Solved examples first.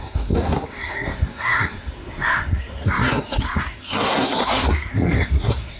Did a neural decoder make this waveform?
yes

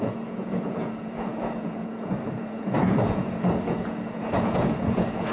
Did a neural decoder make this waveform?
yes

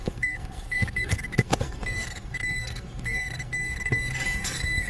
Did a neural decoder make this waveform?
yes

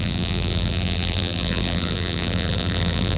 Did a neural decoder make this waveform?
yes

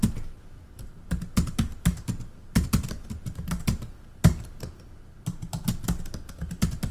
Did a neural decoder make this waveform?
no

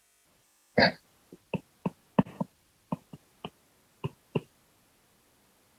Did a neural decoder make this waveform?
no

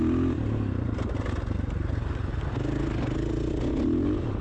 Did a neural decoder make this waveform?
no